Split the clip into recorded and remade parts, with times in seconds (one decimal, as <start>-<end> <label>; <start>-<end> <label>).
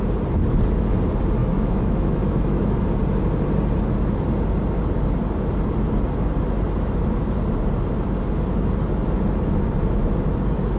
0.0-1.4 recorded; 1.4-2.8 remade; 2.8-10.8 recorded